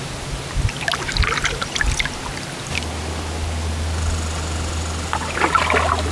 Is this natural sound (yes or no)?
yes